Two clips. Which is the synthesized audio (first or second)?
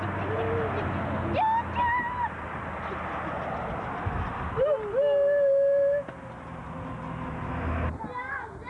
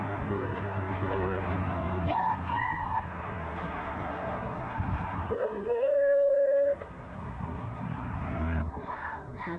second